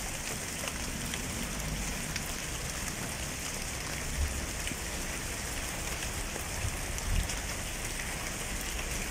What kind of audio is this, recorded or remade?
recorded